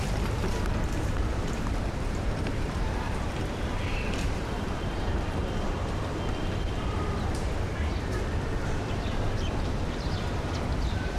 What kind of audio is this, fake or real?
fake